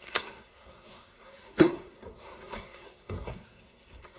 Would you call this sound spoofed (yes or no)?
yes